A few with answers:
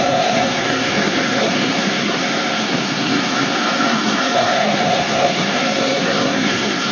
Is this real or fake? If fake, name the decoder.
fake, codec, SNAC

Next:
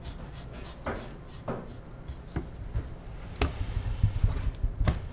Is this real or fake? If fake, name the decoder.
real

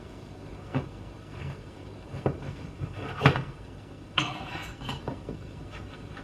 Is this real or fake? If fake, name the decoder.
fake, codec, SNAC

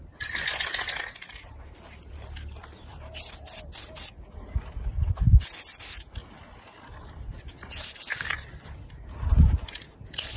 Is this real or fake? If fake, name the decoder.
real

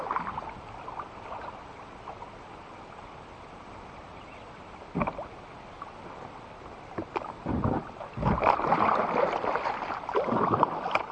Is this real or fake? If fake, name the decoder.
real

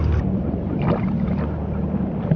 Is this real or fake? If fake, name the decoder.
real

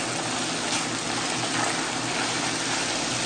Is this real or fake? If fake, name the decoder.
real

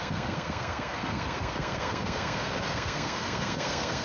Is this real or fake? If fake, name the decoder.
fake, codec, SNAC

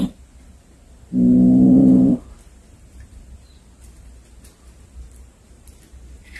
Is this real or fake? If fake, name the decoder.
real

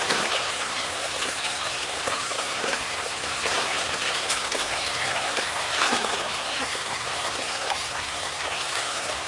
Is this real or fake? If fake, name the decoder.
fake, codec, SNAC